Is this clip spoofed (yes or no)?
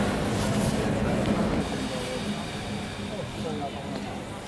no